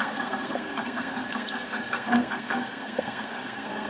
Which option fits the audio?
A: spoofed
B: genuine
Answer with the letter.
A